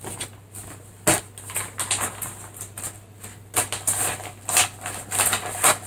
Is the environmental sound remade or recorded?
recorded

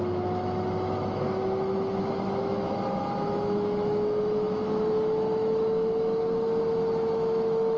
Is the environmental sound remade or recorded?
remade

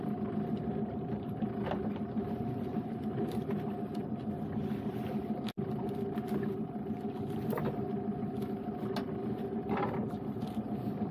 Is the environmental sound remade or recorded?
recorded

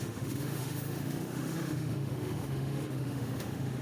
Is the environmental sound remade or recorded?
remade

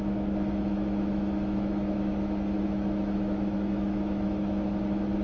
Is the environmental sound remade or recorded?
remade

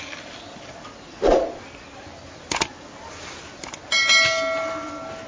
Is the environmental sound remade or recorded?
recorded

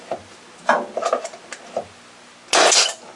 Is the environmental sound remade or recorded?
recorded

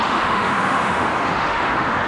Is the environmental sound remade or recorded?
remade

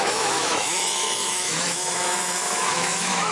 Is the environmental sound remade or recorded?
remade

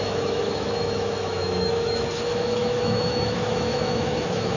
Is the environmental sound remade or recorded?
remade